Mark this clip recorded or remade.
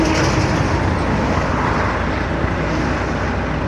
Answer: recorded